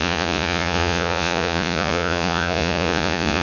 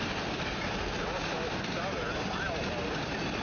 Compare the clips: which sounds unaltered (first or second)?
second